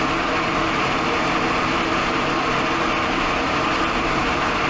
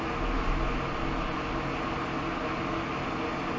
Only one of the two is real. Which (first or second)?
second